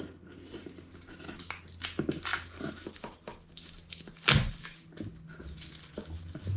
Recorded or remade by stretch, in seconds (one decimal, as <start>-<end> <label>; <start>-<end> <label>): 0.0-6.6 recorded